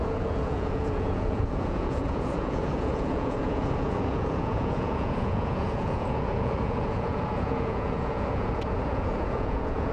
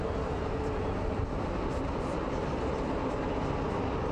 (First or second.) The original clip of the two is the second